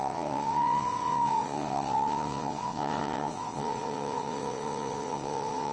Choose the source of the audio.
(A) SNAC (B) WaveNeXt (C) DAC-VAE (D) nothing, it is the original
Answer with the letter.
B